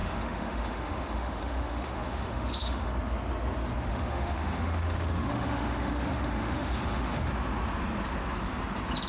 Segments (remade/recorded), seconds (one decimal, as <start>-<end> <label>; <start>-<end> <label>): 0.0-2.9 remade; 2.9-3.9 recorded; 3.9-7.3 remade; 7.3-9.1 recorded